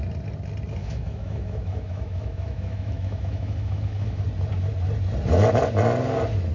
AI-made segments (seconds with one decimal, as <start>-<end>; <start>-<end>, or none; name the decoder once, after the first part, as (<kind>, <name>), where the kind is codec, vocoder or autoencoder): 0.8-4.2 (autoencoder, DAC-VAE)